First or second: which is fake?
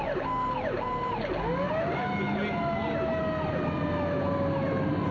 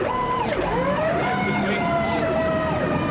second